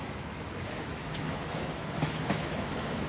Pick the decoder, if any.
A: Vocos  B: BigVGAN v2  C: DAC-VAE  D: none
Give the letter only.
C